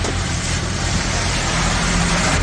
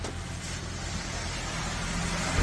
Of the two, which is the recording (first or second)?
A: second